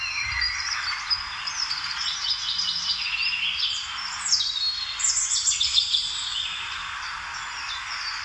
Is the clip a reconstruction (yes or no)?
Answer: no